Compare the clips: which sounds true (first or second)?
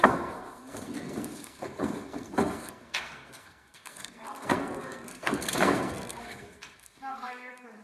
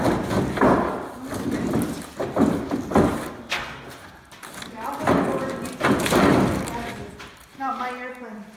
second